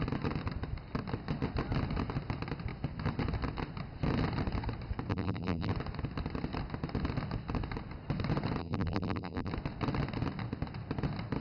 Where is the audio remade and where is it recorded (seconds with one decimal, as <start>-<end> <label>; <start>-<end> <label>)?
0.0-5.1 recorded; 5.1-5.7 remade; 5.7-8.6 recorded; 8.6-9.5 remade; 9.5-11.4 recorded